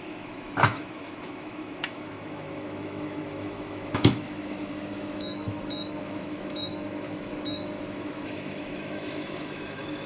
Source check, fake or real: fake